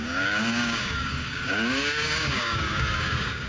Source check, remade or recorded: remade